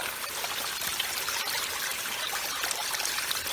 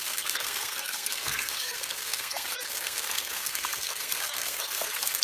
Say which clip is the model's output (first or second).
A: second